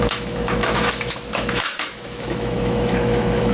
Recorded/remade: remade